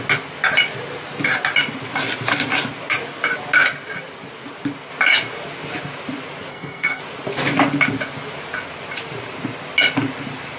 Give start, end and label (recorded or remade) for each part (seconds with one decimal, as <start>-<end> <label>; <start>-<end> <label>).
0.0-6.5 recorded; 6.5-7.0 remade; 7.0-10.6 recorded